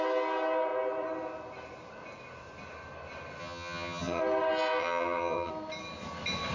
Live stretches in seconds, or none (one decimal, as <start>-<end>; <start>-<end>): 0.0-3.4; 4.2-4.8; 5.5-6.5